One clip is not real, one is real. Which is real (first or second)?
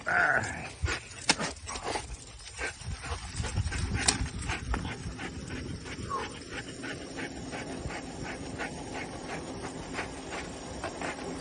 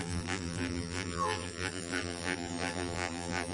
first